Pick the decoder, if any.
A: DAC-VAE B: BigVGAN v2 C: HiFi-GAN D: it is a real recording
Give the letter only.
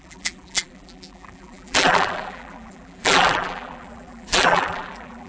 B